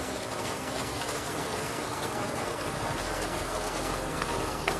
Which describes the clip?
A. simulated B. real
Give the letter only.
A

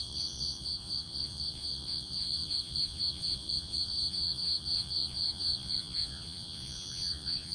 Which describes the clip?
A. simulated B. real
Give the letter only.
A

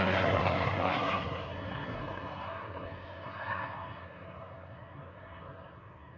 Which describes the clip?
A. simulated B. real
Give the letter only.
A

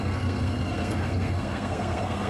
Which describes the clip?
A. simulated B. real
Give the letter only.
A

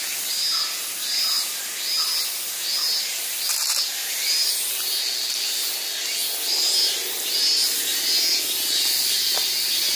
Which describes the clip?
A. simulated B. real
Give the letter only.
B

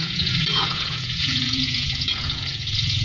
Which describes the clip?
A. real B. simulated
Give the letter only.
B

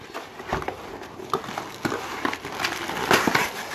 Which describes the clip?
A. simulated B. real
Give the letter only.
B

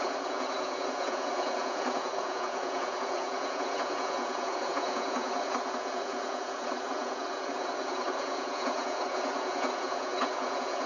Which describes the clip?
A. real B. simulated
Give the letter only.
B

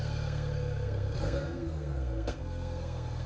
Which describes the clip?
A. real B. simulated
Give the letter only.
B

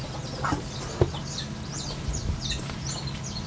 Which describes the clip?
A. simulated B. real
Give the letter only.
B